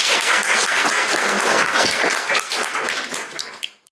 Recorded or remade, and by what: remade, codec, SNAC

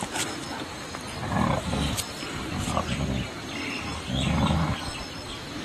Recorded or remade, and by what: recorded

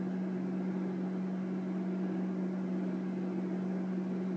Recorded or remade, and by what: recorded